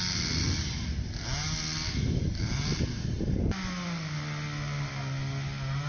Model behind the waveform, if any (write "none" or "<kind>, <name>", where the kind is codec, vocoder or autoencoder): none